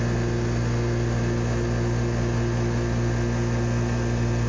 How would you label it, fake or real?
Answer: real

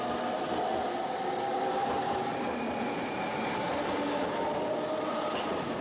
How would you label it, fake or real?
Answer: real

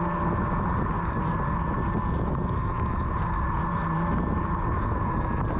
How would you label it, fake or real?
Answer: real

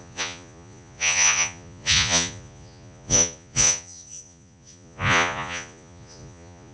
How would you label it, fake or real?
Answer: fake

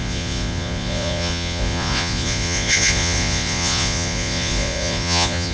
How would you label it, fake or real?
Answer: fake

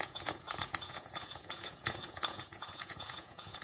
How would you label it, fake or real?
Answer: fake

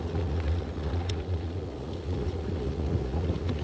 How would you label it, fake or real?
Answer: fake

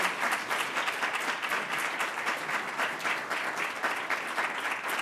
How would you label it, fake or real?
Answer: real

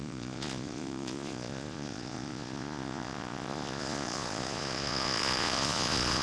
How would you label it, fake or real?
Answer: fake